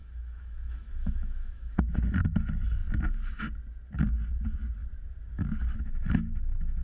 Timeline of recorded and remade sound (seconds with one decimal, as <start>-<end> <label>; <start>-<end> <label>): 0.0-1.8 remade; 1.8-6.8 recorded